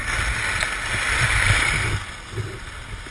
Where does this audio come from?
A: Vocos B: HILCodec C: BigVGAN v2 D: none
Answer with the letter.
D